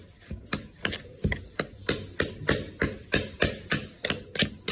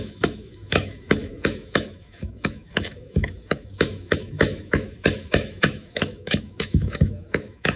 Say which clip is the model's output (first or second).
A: second